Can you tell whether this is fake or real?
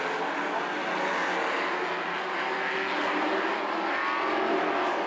real